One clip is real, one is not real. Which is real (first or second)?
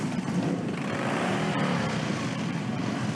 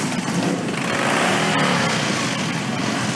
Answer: second